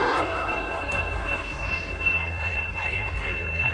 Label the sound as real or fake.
fake